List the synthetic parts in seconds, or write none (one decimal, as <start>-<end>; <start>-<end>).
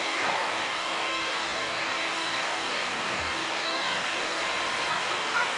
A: 0.0-4.4; 4.9-5.6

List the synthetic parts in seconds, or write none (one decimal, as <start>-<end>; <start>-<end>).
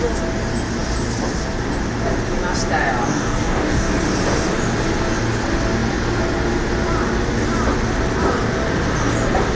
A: 3.1-3.9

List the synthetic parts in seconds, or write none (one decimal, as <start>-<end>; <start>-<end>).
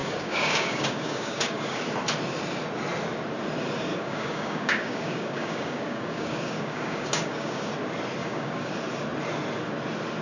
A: 0.0-1.8; 3.9-7.7; 8.2-8.7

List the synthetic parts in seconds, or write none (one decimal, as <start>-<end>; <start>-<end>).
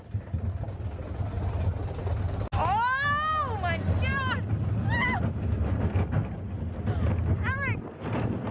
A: none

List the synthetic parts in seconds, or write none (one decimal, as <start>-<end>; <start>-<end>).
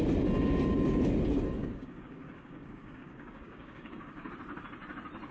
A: 1.6-4.3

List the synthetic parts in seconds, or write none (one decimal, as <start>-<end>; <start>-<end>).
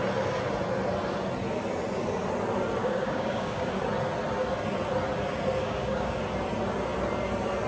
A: 2.8-3.7; 5.6-6.2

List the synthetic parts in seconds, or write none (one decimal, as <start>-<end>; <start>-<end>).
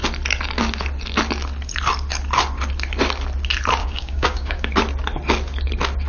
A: 3.8-4.7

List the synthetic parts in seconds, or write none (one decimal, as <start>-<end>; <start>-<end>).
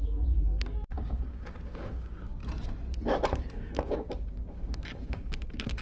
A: 0.0-2.4; 3.5-5.8